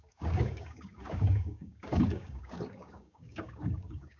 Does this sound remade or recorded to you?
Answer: remade